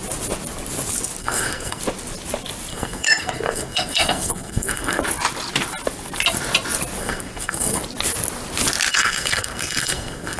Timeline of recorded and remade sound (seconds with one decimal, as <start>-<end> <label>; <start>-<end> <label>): 0.0-1.2 recorded; 1.2-1.8 remade; 1.8-2.7 recorded; 2.7-5.0 remade; 5.0-7.0 recorded; 7.0-7.8 remade; 7.8-8.9 recorded; 8.9-10.4 remade